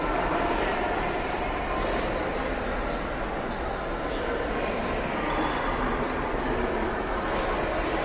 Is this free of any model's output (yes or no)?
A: yes